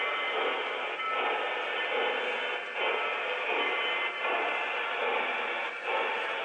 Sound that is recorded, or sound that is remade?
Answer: recorded